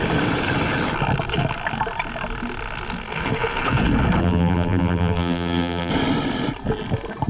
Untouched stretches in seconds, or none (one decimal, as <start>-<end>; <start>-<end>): 0.0-4.2; 5.9-7.3